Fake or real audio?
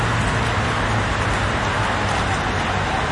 real